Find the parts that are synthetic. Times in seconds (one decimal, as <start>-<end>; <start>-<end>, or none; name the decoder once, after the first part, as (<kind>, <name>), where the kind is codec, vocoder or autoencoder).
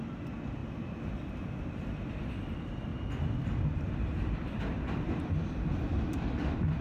0.0-2.9 (vocoder, BigVGAN v2); 3.9-6.8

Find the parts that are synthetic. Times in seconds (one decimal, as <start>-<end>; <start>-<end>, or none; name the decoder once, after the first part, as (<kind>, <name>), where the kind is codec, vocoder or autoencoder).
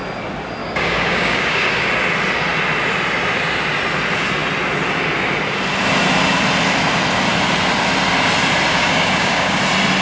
0.6-1.9 (codec, DAC); 8.7-9.6